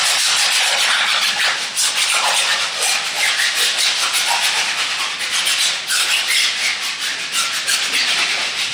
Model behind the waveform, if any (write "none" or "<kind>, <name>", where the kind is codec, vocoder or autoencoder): none